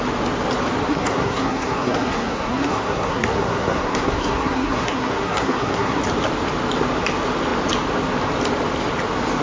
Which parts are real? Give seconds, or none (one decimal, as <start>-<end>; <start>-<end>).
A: 0.0-0.9; 6.0-9.4